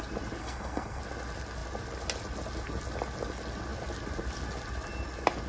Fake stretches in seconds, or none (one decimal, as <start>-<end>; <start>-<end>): 0.4-1.0